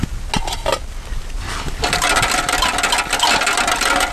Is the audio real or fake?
real